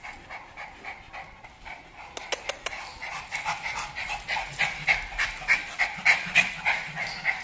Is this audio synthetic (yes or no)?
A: no